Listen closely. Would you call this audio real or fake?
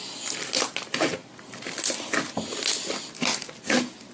real